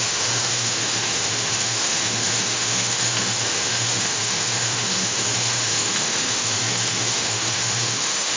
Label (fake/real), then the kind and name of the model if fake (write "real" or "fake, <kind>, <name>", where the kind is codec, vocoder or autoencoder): fake, autoencoder, DAC-VAE